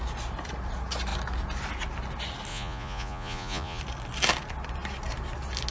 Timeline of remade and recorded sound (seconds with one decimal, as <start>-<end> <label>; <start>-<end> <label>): 0.0-2.5 recorded; 2.5-3.8 remade; 3.8-5.7 recorded